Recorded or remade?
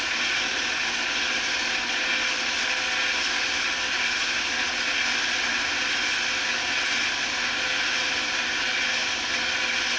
recorded